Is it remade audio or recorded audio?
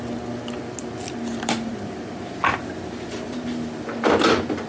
recorded